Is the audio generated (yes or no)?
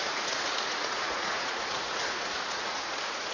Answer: yes